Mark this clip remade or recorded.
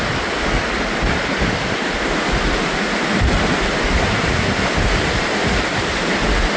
recorded